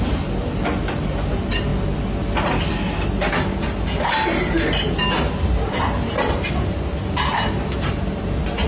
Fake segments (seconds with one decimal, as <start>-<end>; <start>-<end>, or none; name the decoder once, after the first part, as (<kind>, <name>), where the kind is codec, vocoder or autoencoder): 7.3-7.9 (vocoder, BigVGAN v2)